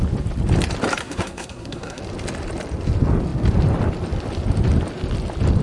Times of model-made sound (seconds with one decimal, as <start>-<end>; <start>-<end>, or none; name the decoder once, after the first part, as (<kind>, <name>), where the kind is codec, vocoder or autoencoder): 1.0-2.0 (codec, SNAC)